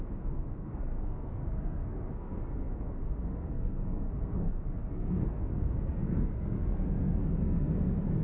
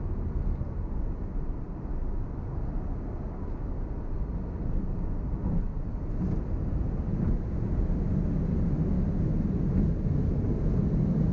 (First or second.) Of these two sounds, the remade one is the first